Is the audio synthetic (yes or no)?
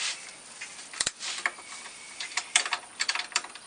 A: yes